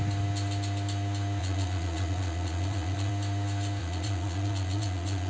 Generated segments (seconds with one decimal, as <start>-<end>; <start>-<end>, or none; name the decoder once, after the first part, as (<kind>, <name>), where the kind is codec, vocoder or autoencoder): 1.4-3.1 (vocoder, Vocos); 3.8-5.3